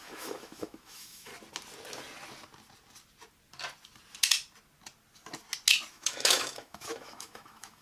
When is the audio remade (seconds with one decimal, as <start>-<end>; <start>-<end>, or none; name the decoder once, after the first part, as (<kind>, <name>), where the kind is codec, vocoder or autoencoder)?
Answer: 0.0-1.3 (autoencoder, DAC-VAE); 5.9-7.8